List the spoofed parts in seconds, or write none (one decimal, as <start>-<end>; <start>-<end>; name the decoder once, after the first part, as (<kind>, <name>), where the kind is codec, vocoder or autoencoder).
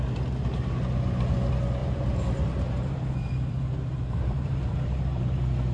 1.8-5.2 (vocoder, BigVGAN v2)